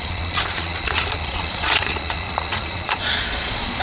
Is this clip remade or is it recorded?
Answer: remade